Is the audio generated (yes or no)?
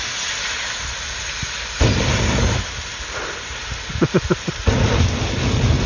no